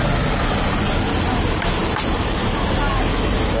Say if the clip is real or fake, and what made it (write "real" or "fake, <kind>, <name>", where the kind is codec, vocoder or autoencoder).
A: real